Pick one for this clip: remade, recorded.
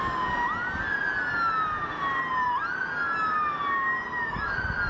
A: recorded